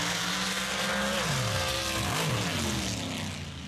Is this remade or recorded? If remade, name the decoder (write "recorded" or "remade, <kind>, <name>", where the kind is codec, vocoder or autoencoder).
recorded